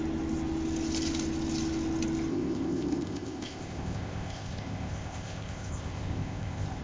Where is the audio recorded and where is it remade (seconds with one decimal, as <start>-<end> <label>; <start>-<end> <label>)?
0.0-2.3 recorded; 2.3-6.8 remade